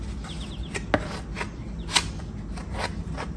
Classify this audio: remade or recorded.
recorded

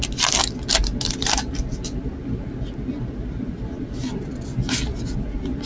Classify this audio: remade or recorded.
recorded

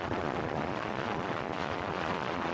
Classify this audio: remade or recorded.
remade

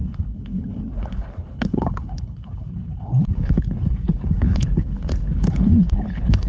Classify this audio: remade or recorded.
remade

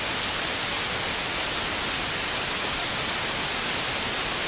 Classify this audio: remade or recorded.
recorded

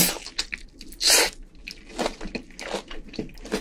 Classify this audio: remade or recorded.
recorded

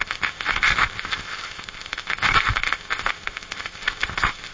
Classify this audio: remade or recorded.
remade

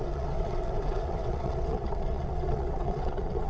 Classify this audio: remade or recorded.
remade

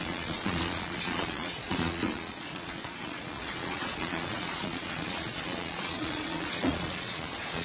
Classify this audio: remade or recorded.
remade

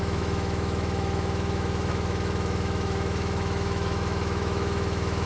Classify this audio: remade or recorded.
remade